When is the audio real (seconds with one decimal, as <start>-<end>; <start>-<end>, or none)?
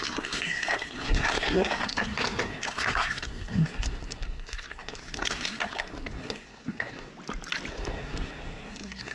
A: 7.1-7.7